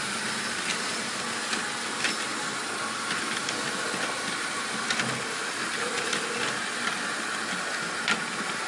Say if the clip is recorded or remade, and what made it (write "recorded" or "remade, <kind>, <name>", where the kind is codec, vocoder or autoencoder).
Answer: recorded